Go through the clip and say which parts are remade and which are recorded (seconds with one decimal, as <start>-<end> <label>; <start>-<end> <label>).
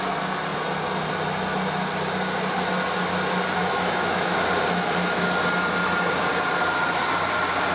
0.0-3.6 recorded; 3.6-4.5 remade; 4.5-7.7 recorded